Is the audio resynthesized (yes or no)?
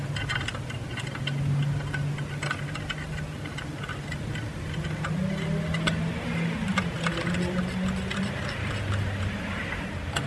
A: no